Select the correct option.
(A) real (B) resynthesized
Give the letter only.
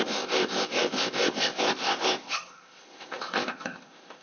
B